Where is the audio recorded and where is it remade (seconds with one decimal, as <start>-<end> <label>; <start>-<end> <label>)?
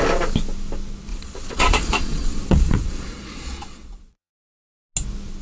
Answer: 0.0-1.1 recorded; 1.1-4.3 remade; 4.3-5.4 recorded